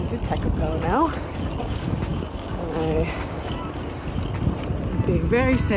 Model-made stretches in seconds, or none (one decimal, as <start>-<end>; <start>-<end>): 1.6-3.5